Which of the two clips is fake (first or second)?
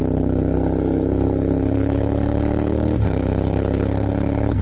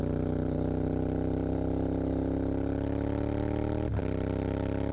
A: first